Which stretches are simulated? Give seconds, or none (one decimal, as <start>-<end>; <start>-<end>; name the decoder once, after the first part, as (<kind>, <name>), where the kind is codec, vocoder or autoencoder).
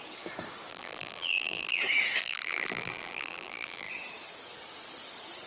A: 0.7-1.8 (vocoder, BigVGAN v2); 2.2-3.9